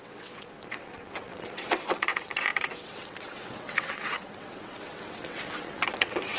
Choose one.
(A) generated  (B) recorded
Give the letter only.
A